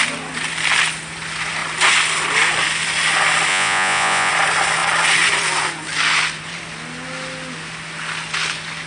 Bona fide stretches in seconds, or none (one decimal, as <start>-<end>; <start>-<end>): 0.0-3.5; 4.3-8.9